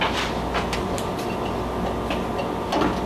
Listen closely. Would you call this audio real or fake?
real